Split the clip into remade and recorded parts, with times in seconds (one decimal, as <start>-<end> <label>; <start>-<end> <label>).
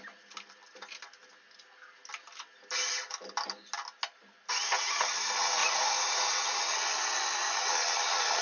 0.0-5.6 recorded; 5.6-6.6 remade; 6.6-8.4 recorded